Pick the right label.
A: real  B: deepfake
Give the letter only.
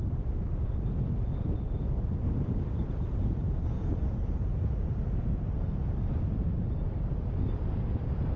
A